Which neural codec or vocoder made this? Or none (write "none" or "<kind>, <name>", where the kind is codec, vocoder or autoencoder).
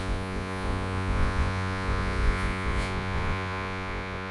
vocoder, Vocos